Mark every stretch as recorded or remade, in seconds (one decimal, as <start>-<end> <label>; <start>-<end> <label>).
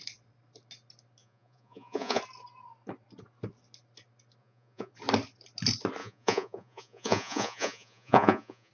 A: 0.0-1.2 recorded; 1.2-2.2 remade; 2.2-4.4 recorded; 4.4-4.9 remade; 4.9-6.0 recorded; 6.0-8.7 remade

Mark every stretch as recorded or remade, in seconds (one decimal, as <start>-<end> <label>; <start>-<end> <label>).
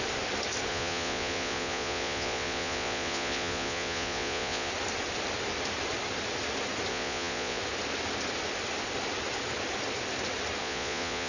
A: 0.0-0.7 recorded; 0.7-4.7 remade; 4.7-6.9 recorded; 6.9-7.6 remade; 7.6-10.6 recorded; 10.6-11.3 remade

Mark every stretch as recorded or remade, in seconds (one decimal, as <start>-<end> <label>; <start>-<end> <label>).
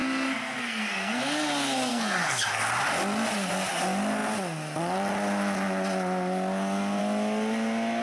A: 0.0-1.2 remade; 1.2-1.9 recorded; 1.9-2.6 remade; 2.6-8.0 recorded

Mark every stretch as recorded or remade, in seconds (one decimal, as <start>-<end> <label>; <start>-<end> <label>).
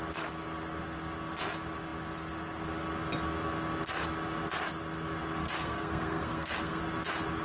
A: 0.0-5.4 recorded; 5.4-6.8 remade; 6.8-7.4 recorded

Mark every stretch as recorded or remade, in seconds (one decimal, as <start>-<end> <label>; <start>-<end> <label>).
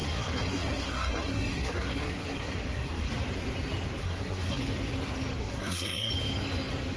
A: 0.0-3.1 remade; 3.1-4.0 recorded; 4.0-4.6 remade; 4.6-5.4 recorded; 5.4-6.1 remade; 6.1-7.0 recorded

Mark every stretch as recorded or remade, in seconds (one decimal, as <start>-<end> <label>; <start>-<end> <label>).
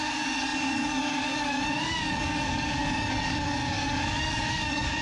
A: 0.0-5.0 remade